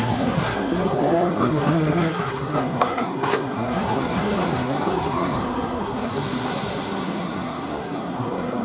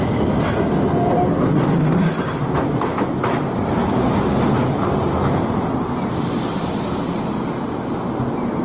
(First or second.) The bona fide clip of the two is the second